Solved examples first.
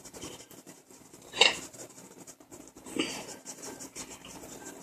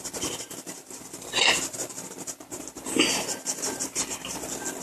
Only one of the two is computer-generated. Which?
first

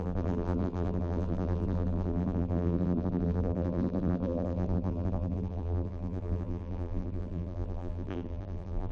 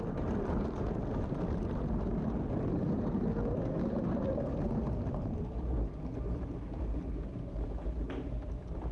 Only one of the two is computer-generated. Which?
first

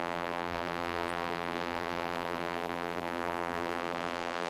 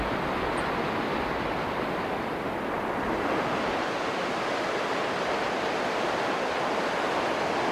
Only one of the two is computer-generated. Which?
first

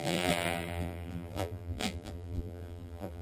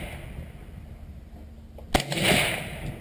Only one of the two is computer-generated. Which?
first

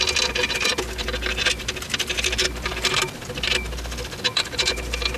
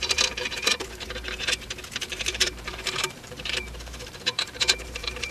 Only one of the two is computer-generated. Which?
second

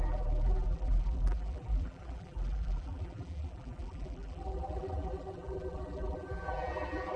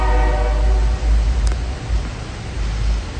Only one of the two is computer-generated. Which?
first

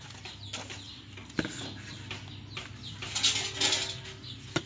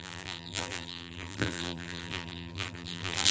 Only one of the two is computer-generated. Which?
second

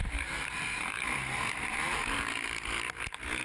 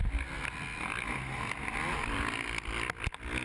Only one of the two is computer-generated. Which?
first